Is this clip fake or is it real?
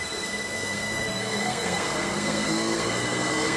fake